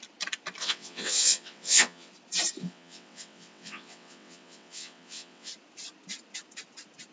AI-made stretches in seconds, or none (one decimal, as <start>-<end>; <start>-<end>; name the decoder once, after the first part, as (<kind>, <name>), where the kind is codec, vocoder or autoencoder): 0.6-2.1 (vocoder, WaveNeXt); 2.6-5.5